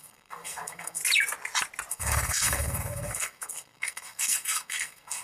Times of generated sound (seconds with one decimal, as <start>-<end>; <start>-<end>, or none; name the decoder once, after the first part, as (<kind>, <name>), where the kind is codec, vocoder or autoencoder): 0.0-1.0 (codec, SNAC); 1.9-5.2